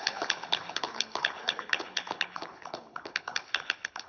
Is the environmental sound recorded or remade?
remade